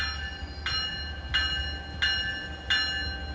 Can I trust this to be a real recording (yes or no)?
yes